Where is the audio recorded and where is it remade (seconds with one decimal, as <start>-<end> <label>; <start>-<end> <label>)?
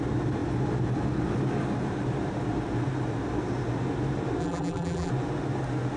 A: 0.0-4.4 recorded; 4.4-5.1 remade; 5.1-6.0 recorded